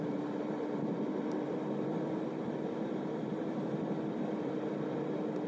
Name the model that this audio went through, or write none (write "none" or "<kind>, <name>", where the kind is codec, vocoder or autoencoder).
vocoder, BigVGAN v2